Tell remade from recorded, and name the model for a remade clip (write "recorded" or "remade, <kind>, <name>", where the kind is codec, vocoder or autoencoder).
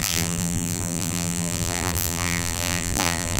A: remade, vocoder, BigVGAN v2